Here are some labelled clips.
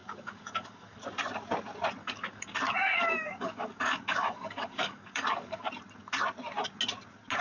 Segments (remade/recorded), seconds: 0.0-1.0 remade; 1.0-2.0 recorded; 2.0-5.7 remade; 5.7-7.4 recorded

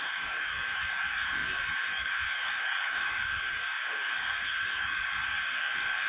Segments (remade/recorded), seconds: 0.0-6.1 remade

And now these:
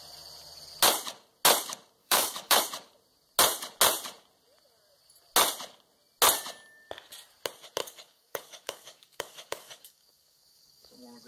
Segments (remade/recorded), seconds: 0.0-2.0 recorded; 2.0-2.6 remade; 2.6-7.8 recorded; 7.8-11.3 remade